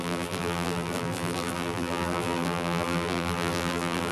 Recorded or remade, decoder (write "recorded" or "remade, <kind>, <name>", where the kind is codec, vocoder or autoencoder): remade, vocoder, BigVGAN v2